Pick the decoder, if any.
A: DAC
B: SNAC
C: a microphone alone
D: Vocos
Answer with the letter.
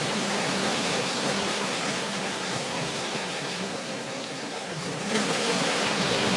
B